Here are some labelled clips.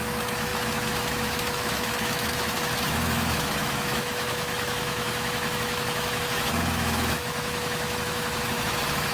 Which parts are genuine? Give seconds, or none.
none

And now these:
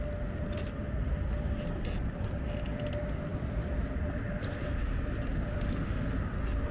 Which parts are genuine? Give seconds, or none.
0.0-5.3; 6.0-6.7